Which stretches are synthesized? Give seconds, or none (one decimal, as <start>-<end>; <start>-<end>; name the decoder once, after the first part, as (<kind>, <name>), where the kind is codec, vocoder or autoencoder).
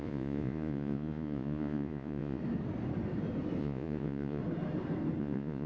0.0-2.4 (vocoder, Vocos); 3.6-4.4; 5.2-5.7